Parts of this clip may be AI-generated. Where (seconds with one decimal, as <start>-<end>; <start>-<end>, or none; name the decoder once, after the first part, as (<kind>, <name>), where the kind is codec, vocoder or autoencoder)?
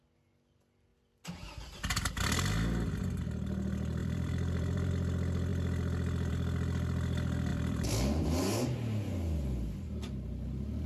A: 0.9-1.8 (vocoder, BigVGAN v2); 4.0-4.9; 7.5-8.2